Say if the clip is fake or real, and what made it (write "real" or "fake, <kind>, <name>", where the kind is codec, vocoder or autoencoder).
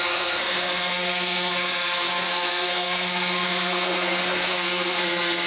fake, codec, SNAC